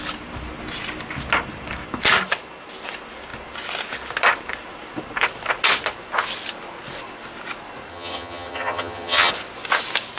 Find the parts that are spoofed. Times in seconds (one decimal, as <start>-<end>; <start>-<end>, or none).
7.9-9.3